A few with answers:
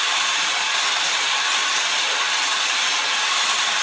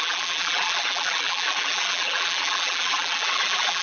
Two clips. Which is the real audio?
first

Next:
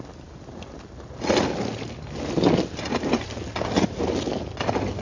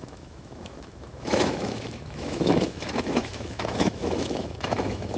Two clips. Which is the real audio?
first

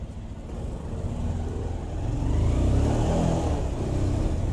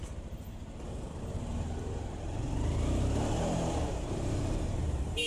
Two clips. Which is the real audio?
first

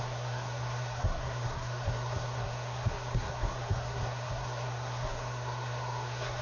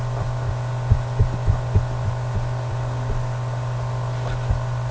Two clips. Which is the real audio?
second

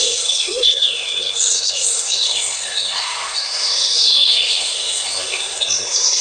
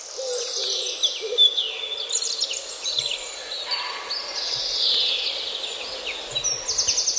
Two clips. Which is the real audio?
second